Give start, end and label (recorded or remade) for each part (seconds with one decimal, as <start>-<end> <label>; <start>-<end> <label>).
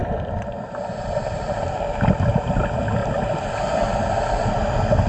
0.0-1.7 remade; 1.7-3.0 recorded; 3.0-4.2 remade; 4.2-5.1 recorded